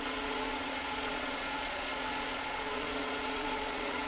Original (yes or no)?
no